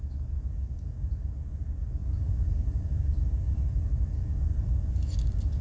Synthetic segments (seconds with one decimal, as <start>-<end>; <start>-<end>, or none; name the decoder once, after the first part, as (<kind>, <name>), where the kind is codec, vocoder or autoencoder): none

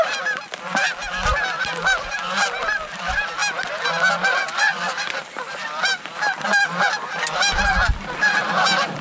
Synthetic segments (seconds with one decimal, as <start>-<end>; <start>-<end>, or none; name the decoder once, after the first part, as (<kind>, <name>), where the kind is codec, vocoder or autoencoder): 0.0-3.4 (vocoder, BigVGAN v2); 4.1-9.0

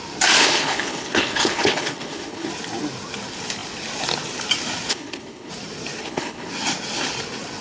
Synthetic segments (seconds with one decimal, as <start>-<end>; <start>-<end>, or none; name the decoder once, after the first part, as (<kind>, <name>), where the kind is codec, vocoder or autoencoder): 0.4-2.5 (codec, HILCodec); 4.9-5.5; 6.0-6.5

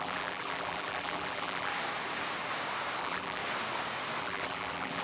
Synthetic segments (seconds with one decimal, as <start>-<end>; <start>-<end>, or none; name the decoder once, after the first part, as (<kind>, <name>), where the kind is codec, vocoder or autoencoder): 0.0-1.7 (vocoder, BigVGAN v2); 3.0-3.4; 4.2-5.0

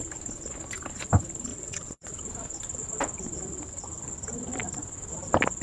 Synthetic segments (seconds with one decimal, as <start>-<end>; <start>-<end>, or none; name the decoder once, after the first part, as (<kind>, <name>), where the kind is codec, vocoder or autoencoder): 1.5-2.2 (vocoder, WaveNeXt)